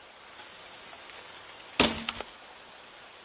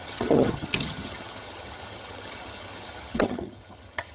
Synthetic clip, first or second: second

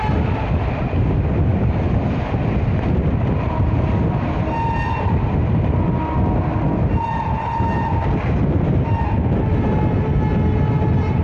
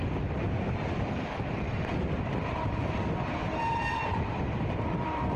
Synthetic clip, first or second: second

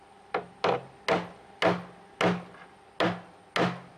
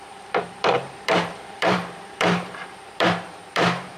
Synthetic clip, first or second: second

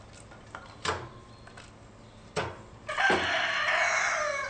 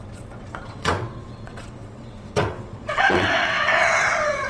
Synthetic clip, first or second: second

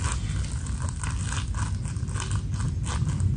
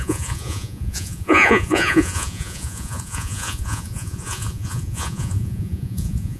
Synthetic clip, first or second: second